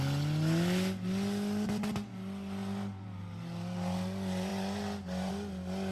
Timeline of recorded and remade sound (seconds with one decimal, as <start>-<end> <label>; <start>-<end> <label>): 0.0-5.9 recorded